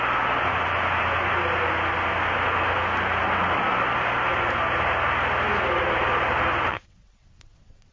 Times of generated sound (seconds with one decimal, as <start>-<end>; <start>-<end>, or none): 6.7-7.9